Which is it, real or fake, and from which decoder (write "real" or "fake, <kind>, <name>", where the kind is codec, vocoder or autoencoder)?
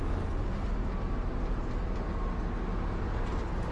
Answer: real